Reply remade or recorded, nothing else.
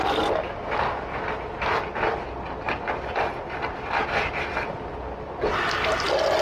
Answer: recorded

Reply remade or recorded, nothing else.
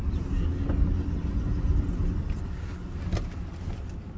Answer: recorded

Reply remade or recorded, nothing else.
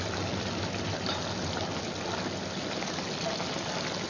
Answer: recorded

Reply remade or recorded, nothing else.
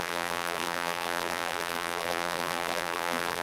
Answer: remade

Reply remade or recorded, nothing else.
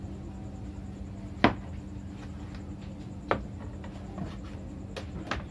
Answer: recorded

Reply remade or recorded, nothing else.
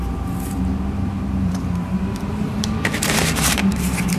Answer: remade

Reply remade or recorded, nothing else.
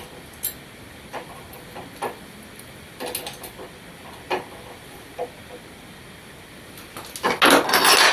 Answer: recorded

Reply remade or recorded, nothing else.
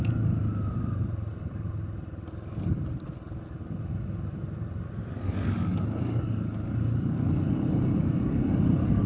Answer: recorded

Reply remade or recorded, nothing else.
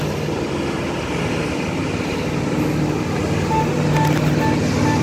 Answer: recorded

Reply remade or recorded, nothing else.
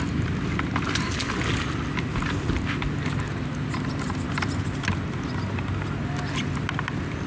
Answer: recorded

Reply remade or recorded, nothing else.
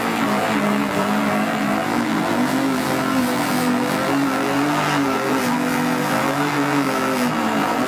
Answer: remade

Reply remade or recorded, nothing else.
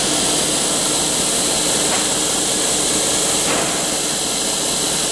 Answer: recorded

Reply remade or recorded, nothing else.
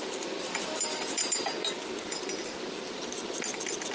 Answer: remade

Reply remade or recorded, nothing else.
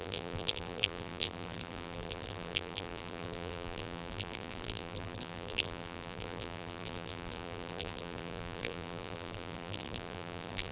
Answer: remade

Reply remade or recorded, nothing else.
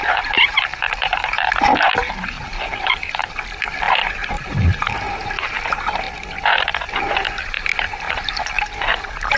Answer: remade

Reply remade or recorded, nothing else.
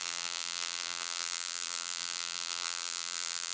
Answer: remade